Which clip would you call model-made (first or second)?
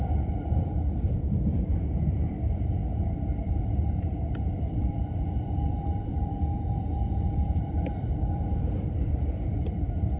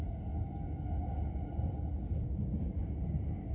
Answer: first